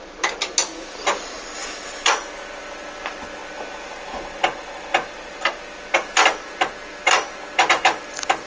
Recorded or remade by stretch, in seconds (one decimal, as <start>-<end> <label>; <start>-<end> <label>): 0.0-8.5 recorded